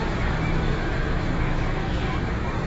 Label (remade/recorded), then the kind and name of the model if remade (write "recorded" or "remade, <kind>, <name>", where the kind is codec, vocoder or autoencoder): remade, autoencoder, DAC-VAE